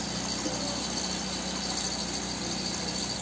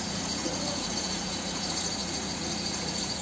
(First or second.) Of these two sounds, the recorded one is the first